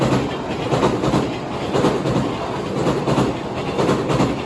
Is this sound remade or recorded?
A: recorded